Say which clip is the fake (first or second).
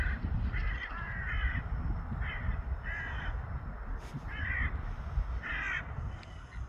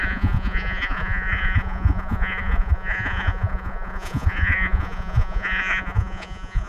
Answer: second